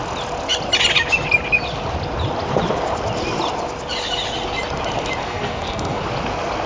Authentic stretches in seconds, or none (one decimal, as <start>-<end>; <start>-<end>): 0.0-5.2; 6.0-6.7

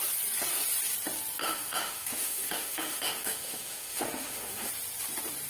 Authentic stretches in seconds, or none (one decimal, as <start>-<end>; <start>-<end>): 0.0-1.4; 4.7-5.5

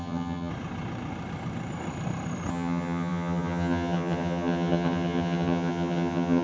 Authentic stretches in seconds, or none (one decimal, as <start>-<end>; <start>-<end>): 0.5-2.5